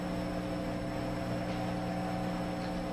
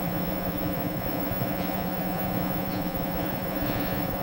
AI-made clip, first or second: second